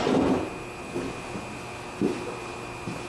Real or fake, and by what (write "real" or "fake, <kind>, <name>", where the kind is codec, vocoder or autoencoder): real